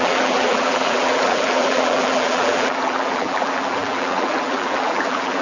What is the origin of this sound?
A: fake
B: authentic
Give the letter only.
A